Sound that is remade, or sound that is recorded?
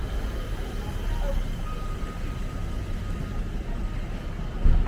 recorded